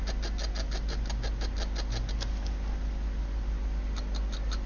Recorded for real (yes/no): yes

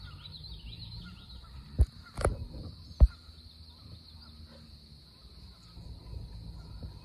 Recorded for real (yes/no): yes